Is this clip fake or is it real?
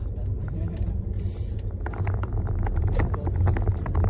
real